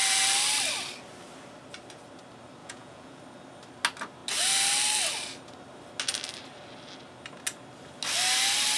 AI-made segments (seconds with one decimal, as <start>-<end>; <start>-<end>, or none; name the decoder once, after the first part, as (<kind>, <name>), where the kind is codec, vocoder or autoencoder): 2.6-3.2 (vocoder, Vocos)